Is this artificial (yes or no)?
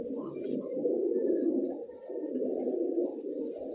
yes